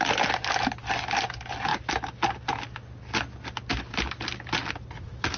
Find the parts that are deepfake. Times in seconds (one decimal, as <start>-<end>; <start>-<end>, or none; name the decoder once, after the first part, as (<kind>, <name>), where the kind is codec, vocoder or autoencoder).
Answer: none